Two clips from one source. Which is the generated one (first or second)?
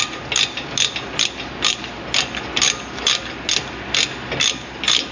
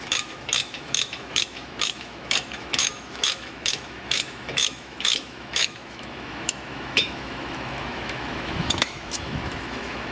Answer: second